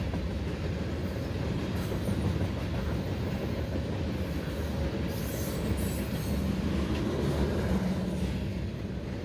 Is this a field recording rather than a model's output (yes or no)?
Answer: yes